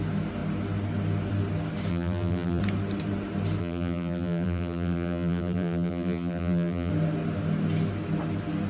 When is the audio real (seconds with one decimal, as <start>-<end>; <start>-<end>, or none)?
0.0-1.9; 2.6-3.6; 6.9-8.7